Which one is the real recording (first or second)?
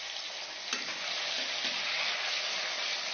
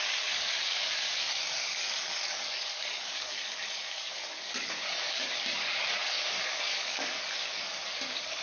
first